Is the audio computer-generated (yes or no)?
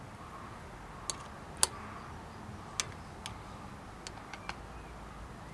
no